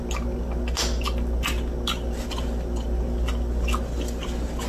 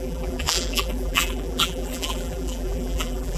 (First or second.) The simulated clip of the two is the second